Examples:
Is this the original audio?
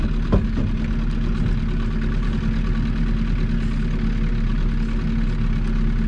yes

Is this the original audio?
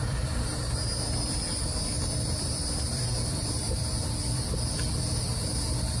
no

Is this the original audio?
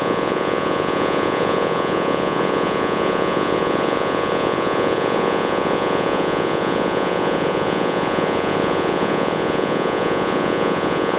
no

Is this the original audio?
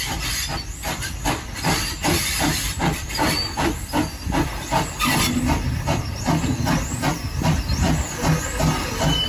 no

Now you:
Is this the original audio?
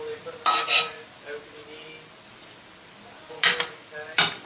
yes